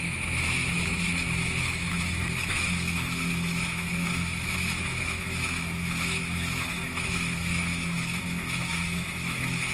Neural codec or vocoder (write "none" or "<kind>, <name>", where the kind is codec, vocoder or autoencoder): autoencoder, DAC-VAE